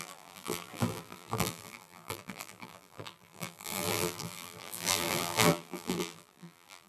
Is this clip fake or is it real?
fake